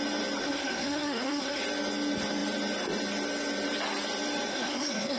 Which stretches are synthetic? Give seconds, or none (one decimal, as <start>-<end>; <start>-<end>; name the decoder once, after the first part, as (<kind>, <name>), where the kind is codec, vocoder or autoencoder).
0.4-1.6 (codec, SNAC); 4.5-5.2